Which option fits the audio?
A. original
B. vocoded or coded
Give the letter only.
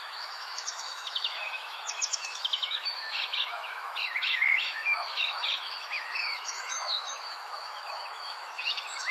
B